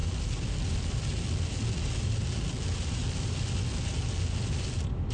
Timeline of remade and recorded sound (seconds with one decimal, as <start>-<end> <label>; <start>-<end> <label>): 0.0-5.1 recorded

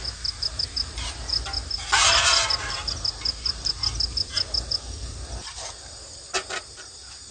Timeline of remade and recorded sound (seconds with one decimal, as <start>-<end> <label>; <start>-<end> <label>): 0.0-7.3 recorded